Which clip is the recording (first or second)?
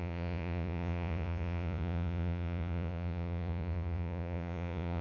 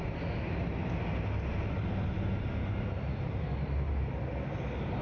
second